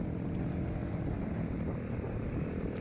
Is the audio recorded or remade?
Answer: recorded